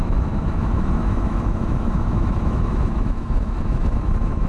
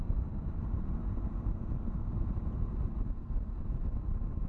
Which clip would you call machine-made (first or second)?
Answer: first